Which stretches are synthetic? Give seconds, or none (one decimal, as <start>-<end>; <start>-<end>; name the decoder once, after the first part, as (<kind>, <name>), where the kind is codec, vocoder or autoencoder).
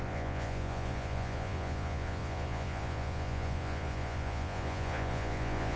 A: 0.0-5.8 (vocoder, Vocos)